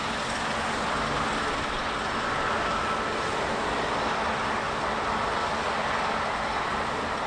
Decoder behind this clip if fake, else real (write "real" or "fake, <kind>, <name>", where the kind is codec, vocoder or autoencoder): real